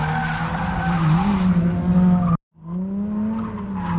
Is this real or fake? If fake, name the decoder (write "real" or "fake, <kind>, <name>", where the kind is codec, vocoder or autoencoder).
real